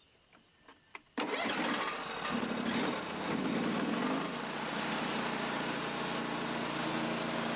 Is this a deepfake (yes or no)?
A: no